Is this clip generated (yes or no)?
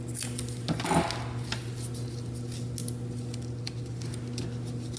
no